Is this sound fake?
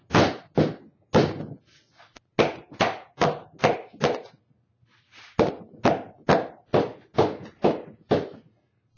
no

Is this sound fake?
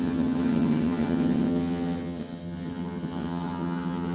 yes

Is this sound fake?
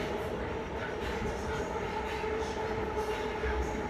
no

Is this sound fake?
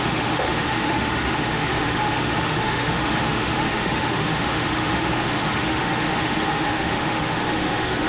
yes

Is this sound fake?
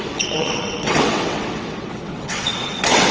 yes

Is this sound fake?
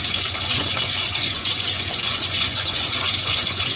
yes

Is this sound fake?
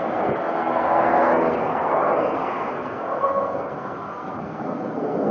yes